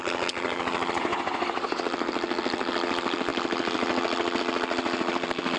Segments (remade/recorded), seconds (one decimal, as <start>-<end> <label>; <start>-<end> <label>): 0.0-1.0 recorded; 1.0-1.8 remade; 1.8-5.6 recorded